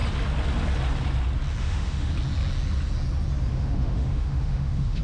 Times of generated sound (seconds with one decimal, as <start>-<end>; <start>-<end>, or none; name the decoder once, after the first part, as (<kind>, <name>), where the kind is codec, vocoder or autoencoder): 1.6-2.1 (autoencoder, DAC-VAE); 3.5-5.0